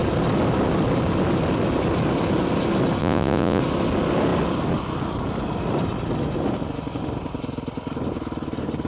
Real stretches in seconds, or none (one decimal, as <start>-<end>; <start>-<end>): 0.0-3.0; 3.6-8.9